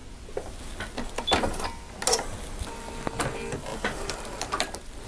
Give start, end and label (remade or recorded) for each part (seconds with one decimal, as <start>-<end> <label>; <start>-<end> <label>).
0.0-3.7 recorded; 3.7-4.6 remade; 4.6-5.1 recorded